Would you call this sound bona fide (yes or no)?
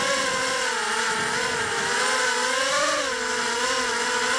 yes